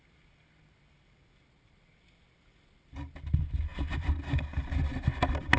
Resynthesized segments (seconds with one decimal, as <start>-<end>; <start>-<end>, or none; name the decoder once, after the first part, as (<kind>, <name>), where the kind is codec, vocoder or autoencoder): none